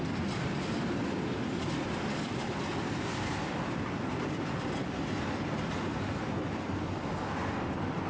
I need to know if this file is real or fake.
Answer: real